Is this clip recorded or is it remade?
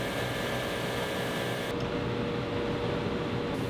recorded